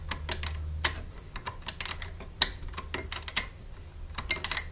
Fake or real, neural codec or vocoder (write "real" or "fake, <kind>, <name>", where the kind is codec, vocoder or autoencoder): real